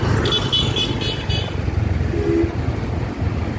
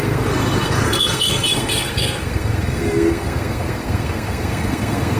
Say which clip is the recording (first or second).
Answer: first